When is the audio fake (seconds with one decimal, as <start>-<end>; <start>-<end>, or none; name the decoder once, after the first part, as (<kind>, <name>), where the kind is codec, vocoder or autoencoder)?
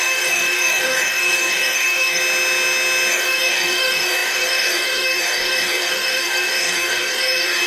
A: 0.0-2.2 (codec, DAC); 3.1-7.7